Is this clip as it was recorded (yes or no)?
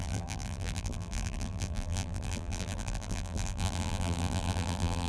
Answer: no